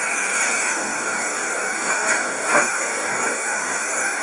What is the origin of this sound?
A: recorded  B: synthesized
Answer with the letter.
B